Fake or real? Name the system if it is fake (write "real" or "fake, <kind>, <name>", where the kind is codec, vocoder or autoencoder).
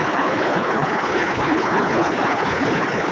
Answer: fake, codec, HILCodec